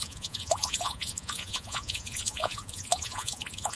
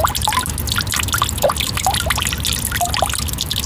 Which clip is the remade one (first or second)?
first